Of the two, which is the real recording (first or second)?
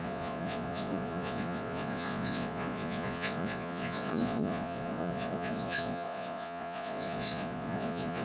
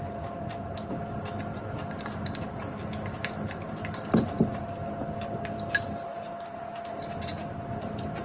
second